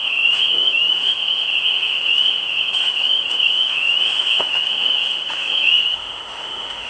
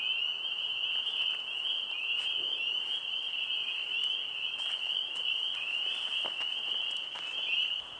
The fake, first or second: first